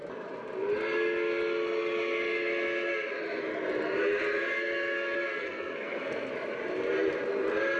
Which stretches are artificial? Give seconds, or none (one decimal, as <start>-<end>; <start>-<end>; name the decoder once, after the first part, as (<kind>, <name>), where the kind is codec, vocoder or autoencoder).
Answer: 5.3-6.3 (codec, SNAC)